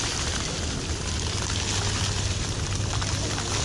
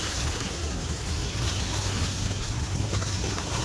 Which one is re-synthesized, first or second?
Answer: second